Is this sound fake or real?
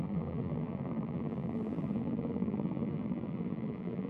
fake